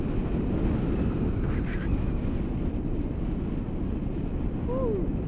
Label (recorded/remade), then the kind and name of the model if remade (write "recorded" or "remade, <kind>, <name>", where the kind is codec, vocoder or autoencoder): recorded